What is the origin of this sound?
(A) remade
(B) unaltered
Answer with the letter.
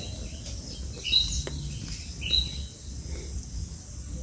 B